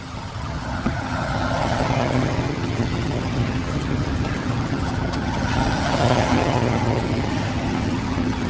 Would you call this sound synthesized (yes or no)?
yes